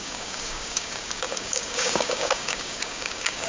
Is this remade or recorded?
remade